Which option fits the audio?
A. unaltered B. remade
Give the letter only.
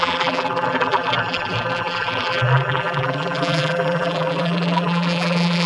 B